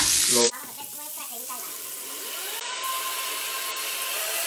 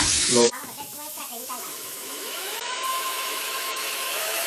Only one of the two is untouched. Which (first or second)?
first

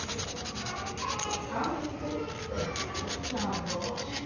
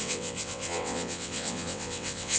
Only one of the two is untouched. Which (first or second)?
first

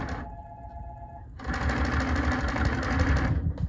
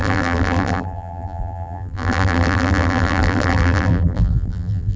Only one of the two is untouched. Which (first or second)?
first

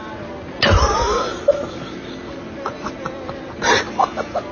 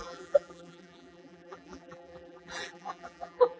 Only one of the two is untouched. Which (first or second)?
first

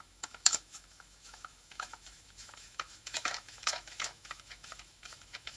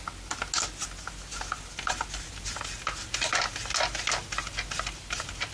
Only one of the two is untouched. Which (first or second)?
second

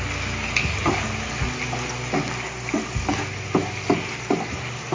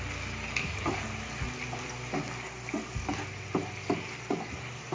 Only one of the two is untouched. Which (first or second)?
first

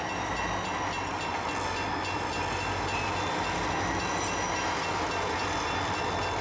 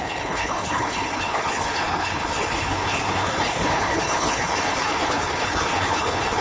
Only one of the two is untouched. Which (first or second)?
first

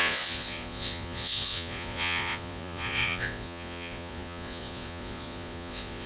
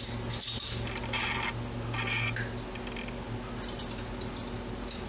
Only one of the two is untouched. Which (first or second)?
second